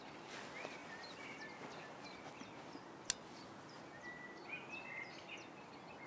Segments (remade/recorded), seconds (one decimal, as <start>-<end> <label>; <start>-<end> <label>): 0.0-6.1 recorded